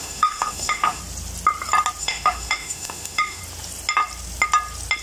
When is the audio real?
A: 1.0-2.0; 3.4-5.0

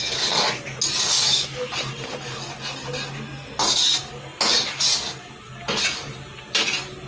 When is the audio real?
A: 0.0-1.1; 1.7-7.1

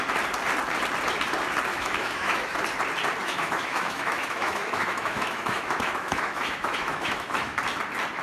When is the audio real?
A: 0.0-1.7; 2.6-3.2; 7.6-8.2